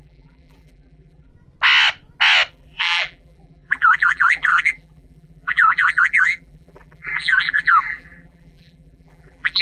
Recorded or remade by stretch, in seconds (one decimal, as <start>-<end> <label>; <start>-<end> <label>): 0.0-1.3 remade; 1.3-2.5 recorded; 2.5-9.6 remade